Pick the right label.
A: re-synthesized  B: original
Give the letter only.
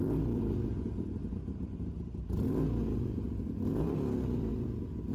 B